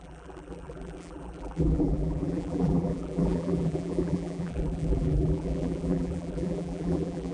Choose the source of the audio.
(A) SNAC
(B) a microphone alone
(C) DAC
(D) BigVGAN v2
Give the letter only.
D